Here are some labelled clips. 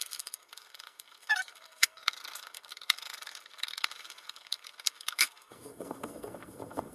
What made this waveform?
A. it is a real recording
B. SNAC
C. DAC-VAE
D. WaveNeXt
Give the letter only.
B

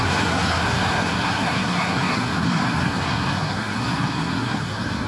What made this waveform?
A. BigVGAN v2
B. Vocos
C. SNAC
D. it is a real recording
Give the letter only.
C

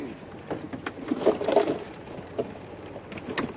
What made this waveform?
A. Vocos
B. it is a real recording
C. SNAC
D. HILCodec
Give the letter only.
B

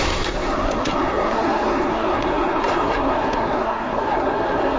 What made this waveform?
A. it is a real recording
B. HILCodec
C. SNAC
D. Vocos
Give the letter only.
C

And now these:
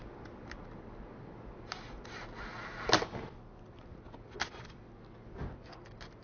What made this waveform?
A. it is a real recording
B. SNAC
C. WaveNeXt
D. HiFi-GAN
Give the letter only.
A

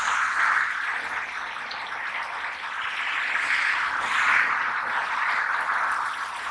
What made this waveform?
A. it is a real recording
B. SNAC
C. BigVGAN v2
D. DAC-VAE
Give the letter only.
A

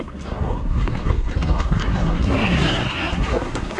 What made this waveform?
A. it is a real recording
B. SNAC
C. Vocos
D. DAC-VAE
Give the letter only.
B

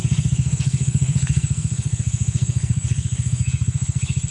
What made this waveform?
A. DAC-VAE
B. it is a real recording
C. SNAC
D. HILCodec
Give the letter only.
C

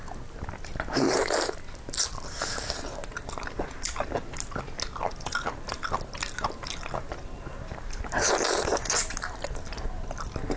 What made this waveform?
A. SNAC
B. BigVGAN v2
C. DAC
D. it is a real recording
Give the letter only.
D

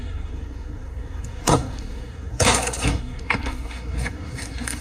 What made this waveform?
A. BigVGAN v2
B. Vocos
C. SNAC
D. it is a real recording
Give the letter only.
C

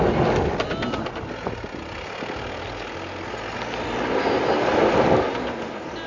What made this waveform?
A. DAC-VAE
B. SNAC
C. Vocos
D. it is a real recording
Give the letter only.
D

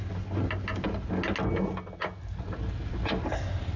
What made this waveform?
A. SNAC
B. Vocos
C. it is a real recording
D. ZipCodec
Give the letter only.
C